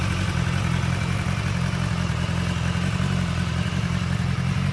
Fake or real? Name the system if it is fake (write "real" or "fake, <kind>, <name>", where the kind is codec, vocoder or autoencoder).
real